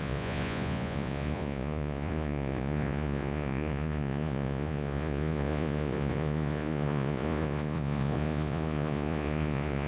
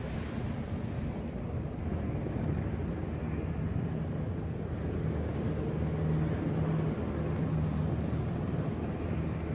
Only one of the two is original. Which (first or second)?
second